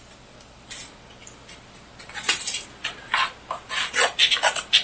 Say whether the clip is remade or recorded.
recorded